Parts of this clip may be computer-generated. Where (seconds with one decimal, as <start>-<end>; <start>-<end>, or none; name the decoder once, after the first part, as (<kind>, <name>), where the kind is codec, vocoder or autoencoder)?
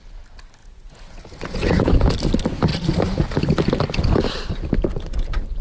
0.6-2.1 (vocoder, Vocos)